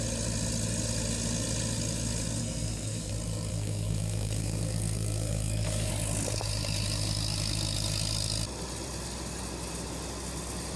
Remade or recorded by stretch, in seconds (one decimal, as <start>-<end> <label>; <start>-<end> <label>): 0.0-2.4 recorded; 2.4-3.1 remade; 3.1-3.5 recorded; 3.5-5.9 remade; 5.9-10.8 recorded